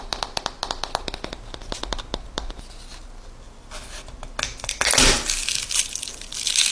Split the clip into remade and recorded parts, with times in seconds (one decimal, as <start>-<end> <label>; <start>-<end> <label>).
0.0-6.7 recorded

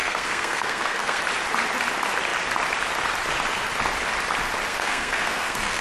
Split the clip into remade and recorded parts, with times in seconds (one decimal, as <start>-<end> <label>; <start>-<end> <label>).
0.0-1.2 remade; 1.2-4.7 recorded; 4.7-5.8 remade

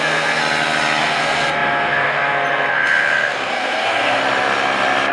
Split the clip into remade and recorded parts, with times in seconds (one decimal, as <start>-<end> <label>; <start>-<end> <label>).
0.0-0.4 remade; 0.4-1.0 recorded; 1.0-4.2 remade; 4.2-5.1 recorded

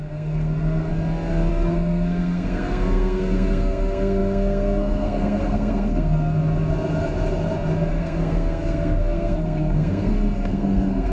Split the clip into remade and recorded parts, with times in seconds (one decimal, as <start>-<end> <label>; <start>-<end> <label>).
0.0-0.9 remade; 0.9-1.5 recorded; 1.5-6.4 remade; 6.4-7.9 recorded; 7.9-11.1 remade

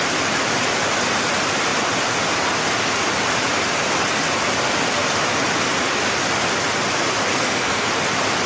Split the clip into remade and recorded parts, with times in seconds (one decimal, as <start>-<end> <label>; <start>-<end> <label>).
0.0-7.3 recorded; 7.3-7.9 remade; 7.9-8.5 recorded

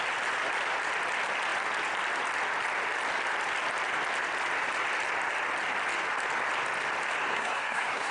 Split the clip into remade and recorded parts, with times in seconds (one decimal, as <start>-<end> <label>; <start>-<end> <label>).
0.0-7.3 recorded; 7.3-8.1 remade